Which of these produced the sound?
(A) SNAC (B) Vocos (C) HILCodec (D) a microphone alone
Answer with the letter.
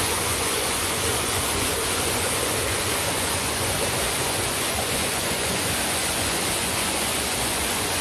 B